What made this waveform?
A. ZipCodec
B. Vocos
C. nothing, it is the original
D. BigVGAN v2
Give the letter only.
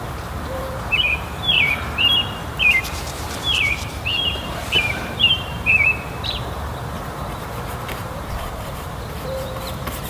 D